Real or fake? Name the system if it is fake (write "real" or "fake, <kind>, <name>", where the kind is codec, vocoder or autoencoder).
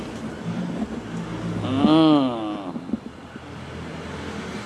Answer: real